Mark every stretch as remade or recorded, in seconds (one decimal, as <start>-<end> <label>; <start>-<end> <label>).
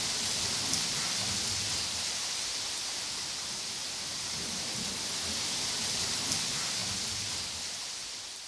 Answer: 0.0-4.1 recorded; 4.1-4.6 remade; 4.6-8.5 recorded